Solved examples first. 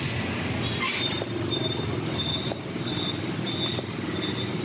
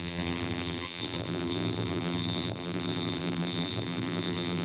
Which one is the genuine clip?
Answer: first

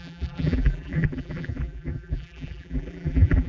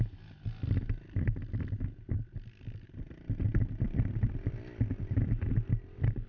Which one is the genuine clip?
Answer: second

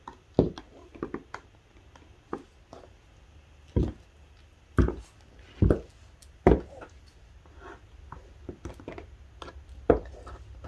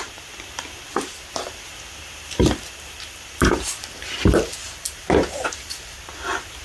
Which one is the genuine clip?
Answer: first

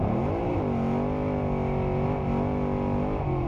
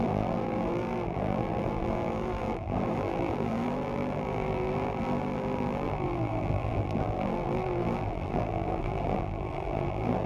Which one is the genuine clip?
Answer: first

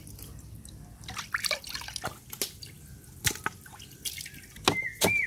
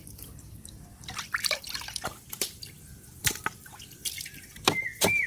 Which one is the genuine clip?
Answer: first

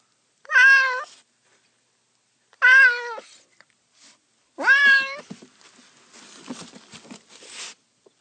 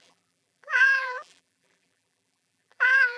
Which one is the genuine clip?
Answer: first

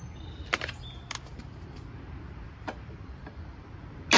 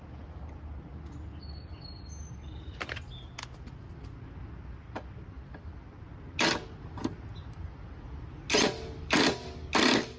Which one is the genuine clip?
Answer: second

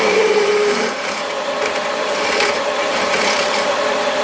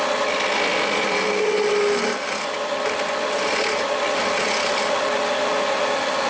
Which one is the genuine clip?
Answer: second